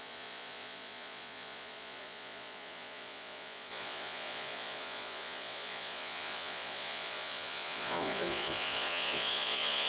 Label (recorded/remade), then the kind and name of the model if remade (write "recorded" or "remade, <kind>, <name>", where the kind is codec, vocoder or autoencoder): remade, vocoder, Vocos